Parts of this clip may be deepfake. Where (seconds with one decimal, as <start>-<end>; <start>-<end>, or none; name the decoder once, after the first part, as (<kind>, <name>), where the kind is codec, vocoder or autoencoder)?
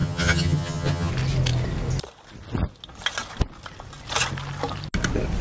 0.0-1.1 (vocoder, HiFi-GAN)